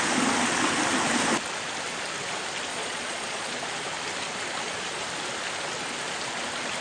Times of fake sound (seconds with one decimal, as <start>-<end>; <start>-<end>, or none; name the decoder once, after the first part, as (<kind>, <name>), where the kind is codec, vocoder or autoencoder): 2.7-3.5 (vocoder, Vocos)